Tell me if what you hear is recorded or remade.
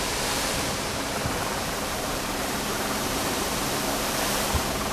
remade